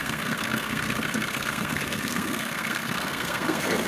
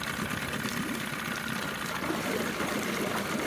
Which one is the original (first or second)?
second